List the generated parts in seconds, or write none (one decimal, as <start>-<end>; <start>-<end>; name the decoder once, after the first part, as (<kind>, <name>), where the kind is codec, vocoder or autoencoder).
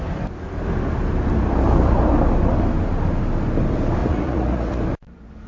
4.0-4.8 (vocoder, Vocos)